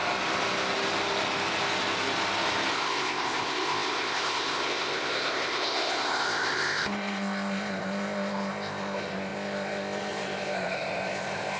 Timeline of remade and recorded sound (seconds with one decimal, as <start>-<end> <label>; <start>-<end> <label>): 0.0-2.7 recorded; 2.7-11.6 remade